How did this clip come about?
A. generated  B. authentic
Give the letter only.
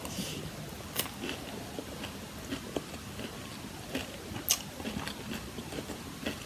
B